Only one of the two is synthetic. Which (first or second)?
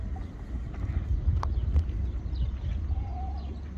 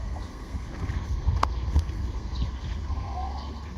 second